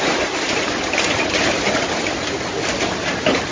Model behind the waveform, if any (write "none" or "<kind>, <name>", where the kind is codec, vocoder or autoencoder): none